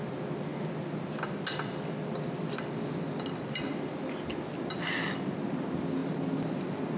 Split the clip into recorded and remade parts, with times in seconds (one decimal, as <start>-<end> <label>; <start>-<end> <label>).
0.0-7.0 recorded

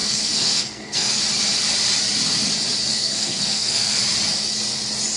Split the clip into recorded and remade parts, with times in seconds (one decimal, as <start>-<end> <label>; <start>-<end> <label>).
0.0-1.2 remade; 1.2-2.9 recorded; 2.9-4.0 remade; 4.0-5.2 recorded

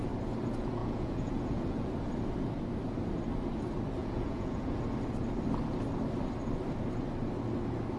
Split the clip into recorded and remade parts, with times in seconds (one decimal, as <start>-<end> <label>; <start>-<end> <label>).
0.0-0.8 recorded; 0.8-1.9 remade; 1.9-4.0 recorded; 4.0-4.8 remade; 4.8-8.0 recorded

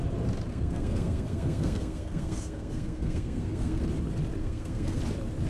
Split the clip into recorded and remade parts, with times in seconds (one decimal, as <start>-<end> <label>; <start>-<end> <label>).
0.0-0.5 recorded; 0.5-3.8 remade; 3.8-4.4 recorded; 4.4-5.0 remade; 5.0-5.5 recorded

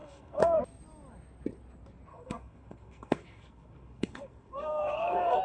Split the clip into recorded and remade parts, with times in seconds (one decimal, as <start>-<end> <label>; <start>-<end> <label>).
0.0-0.6 remade; 0.6-2.1 recorded; 2.1-5.4 remade